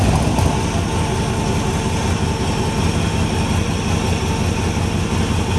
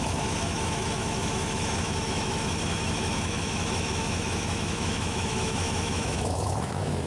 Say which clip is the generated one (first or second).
second